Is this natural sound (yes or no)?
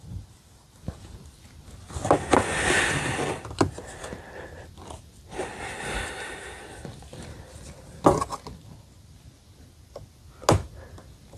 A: yes